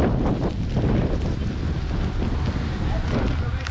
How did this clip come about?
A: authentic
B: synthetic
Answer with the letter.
A